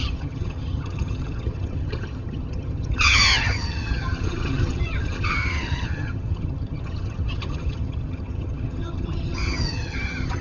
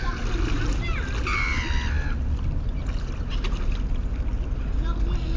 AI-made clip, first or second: first